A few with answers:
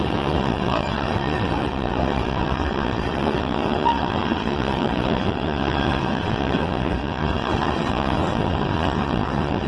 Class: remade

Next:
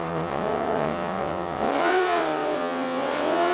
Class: remade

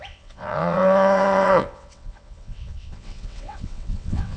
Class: remade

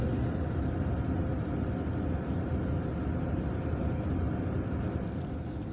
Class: recorded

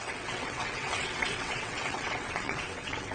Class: remade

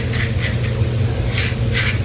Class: recorded